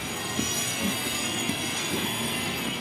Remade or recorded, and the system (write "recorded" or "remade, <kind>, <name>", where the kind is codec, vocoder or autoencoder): remade, codec, SNAC